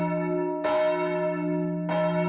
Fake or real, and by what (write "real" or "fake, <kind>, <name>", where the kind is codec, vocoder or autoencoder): real